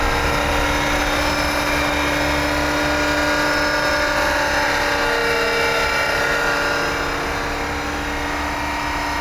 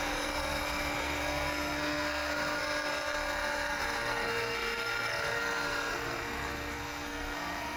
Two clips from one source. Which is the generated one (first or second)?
second